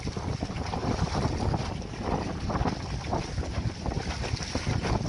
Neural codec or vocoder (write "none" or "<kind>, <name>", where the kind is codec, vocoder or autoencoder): none